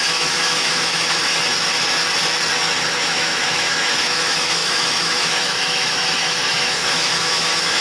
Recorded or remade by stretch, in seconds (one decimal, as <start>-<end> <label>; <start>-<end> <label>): 0.0-1.2 remade; 1.2-3.0 recorded; 3.0-7.8 remade